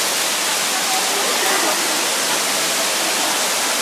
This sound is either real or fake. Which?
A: real